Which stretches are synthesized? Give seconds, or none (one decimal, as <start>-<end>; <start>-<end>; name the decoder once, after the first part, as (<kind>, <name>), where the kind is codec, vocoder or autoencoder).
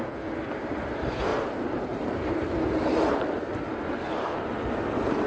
1.3-4.5 (vocoder, BigVGAN v2)